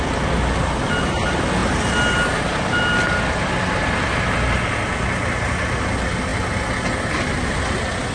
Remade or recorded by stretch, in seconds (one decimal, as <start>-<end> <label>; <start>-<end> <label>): 0.0-8.1 recorded